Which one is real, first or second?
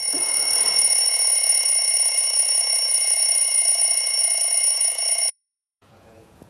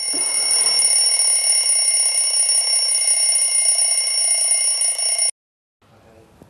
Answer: second